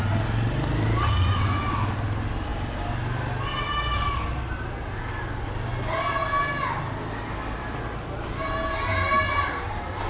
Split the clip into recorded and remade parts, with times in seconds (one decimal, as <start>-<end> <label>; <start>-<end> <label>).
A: 0.0-10.1 recorded